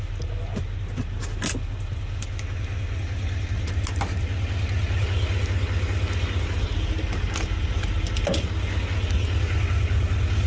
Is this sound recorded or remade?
recorded